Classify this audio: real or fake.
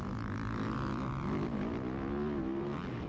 real